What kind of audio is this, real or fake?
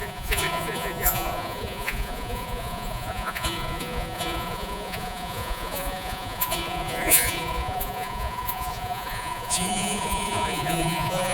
fake